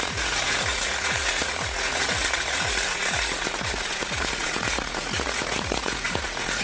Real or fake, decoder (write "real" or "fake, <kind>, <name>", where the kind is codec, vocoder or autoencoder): fake, vocoder, Vocos